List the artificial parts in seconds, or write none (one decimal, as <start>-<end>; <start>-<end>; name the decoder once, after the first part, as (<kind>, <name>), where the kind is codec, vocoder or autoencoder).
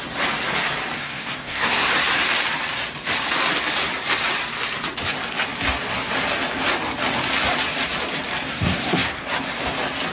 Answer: 1.0-1.9 (codec, SNAC); 8.5-9.3